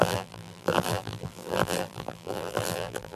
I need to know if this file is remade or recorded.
remade